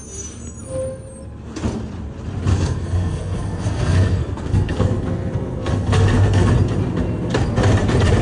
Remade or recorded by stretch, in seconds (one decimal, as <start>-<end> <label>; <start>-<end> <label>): 0.0-2.5 recorded; 2.5-6.5 remade; 6.5-8.2 recorded